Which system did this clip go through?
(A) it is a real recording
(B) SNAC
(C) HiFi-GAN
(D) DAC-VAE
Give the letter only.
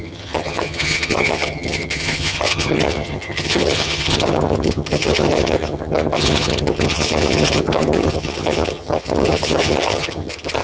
C